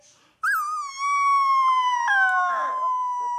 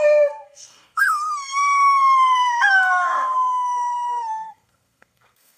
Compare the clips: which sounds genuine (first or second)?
first